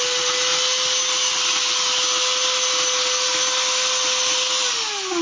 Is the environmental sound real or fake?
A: real